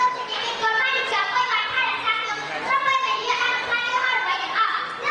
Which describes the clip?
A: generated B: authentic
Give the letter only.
B